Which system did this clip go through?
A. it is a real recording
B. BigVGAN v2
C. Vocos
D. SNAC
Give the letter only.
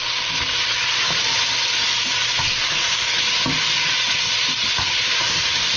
A